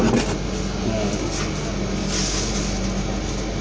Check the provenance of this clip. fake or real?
real